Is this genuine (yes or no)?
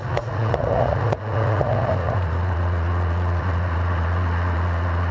no